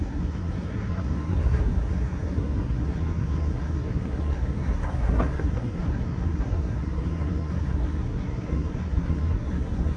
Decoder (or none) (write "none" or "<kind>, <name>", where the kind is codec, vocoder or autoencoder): codec, SNAC